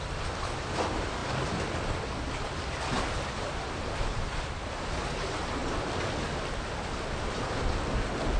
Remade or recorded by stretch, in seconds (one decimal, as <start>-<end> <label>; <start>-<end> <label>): 0.0-8.4 recorded